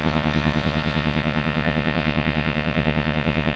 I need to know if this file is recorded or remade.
remade